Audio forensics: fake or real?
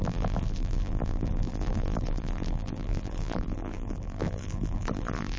fake